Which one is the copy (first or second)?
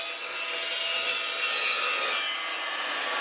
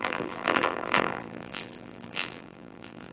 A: second